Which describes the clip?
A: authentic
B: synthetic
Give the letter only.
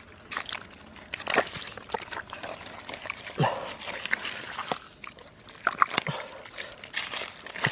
A